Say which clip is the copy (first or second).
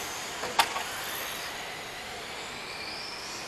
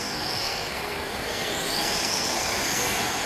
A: second